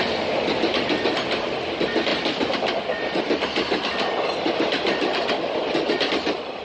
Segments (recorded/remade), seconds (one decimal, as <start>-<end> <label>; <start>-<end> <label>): 0.0-6.6 recorded